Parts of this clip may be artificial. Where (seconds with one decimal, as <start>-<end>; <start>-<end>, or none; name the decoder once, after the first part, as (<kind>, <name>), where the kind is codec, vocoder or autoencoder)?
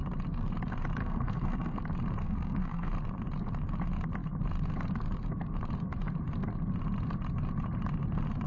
1.0-1.8 (codec, SNAC); 2.2-2.9